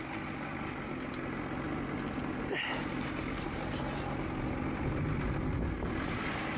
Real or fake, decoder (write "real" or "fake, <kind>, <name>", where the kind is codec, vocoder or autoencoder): real